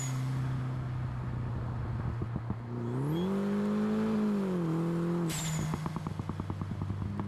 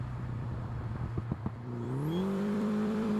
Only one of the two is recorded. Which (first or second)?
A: first